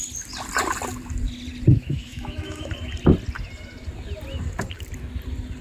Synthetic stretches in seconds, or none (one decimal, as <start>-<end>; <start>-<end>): 1.7-2.7